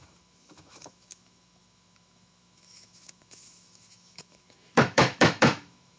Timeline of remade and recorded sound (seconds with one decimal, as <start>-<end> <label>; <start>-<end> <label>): 0.0-6.0 remade